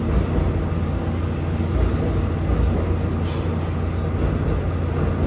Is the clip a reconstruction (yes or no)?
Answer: no